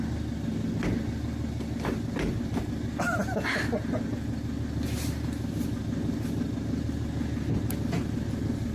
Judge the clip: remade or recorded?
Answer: recorded